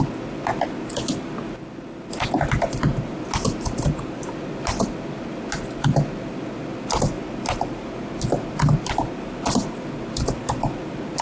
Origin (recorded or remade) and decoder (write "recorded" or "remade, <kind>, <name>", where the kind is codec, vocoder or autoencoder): recorded